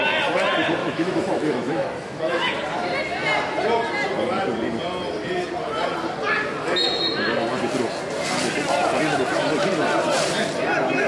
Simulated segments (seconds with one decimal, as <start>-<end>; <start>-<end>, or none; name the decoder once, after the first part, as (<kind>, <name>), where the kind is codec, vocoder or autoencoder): 0.8-2.5 (autoencoder, DAC-VAE)